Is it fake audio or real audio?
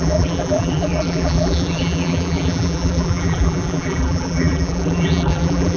fake